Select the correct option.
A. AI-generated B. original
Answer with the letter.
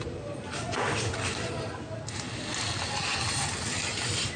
B